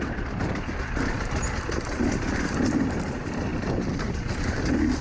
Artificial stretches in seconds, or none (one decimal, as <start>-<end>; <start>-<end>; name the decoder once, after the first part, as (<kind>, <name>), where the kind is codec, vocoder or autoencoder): none